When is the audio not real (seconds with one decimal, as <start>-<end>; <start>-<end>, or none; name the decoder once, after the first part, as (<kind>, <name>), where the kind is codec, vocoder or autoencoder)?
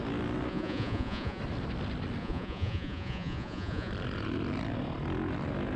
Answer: 0.5-1.4 (vocoder, Vocos); 2.2-3.9